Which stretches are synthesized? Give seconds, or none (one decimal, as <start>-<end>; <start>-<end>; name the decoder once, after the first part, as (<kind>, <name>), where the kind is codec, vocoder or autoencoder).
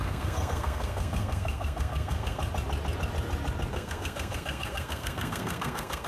0.0-2.4 (codec, SNAC); 3.7-6.1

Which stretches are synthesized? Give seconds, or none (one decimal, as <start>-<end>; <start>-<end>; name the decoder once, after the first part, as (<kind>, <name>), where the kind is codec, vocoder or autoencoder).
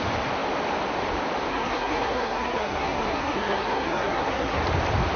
1.5-4.6 (codec, SNAC)